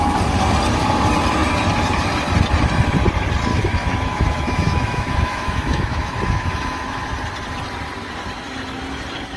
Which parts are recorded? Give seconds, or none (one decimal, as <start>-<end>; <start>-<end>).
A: 0.0-3.5; 7.1-9.4